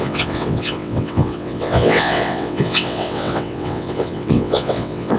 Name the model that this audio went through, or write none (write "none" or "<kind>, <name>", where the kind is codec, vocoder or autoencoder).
vocoder, WaveNeXt